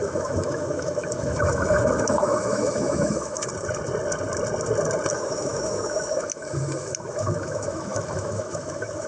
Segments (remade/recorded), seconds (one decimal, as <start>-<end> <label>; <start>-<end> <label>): 0.0-3.5 remade; 3.5-5.1 recorded; 5.1-9.1 remade